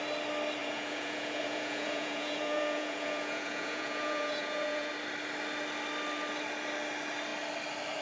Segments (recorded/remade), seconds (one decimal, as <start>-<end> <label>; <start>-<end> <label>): 0.0-0.6 recorded; 0.6-4.9 remade; 4.9-8.0 recorded